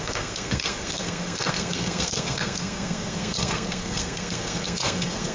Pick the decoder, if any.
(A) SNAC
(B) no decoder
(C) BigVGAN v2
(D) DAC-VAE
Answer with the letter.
A